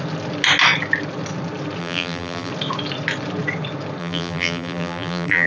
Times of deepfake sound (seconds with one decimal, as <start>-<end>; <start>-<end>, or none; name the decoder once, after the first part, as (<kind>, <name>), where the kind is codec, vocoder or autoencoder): 1.8-2.5 (vocoder, BigVGAN v2); 4.0-5.5